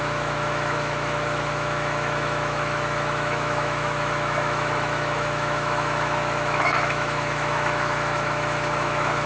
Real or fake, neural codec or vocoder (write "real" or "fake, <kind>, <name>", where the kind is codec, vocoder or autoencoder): fake, autoencoder, DAC-VAE